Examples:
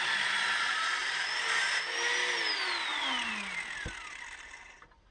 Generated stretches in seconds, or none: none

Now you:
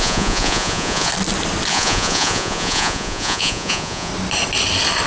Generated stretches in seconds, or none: 0.0-1.1 (vocoder, Vocos); 1.7-4.1

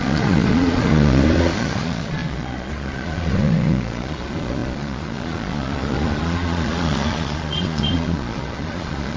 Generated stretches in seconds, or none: 0.0-9.2 (vocoder, Vocos)

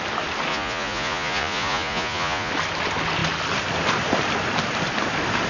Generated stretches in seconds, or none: 0.5-2.5 (vocoder, Vocos)

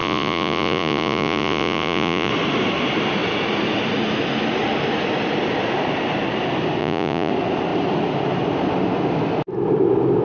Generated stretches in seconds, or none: 0.0-2.3 (vocoder, Vocos); 6.8-7.3

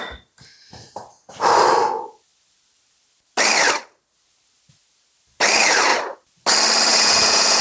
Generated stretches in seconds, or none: 6.9-7.6 (vocoder, Vocos)

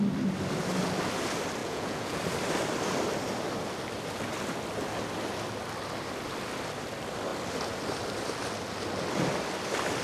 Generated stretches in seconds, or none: 1.6-2.2 (vocoder, Vocos)

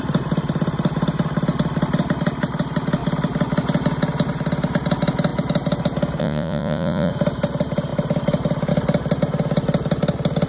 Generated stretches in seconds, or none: 6.2-7.1 (vocoder, Vocos)